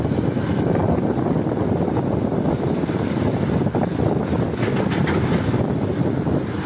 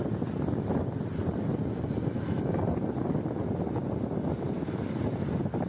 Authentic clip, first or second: second